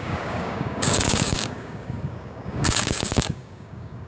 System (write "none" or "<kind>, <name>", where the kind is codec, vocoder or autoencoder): codec, DAC